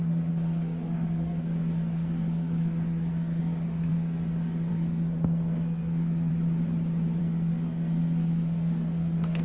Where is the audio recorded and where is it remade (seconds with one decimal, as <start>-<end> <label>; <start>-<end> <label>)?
0.0-6.3 remade; 6.3-7.2 recorded; 7.2-9.4 remade